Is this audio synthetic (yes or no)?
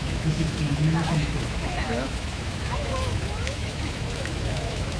yes